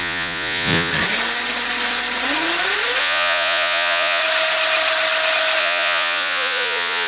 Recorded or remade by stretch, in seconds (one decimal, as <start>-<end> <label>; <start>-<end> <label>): 0.0-0.9 remade; 0.9-3.0 recorded; 3.0-4.2 remade; 4.2-5.6 recorded; 5.6-7.1 remade